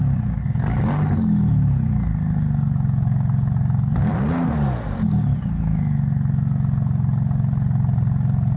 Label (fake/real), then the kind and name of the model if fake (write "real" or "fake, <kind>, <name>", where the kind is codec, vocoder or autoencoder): real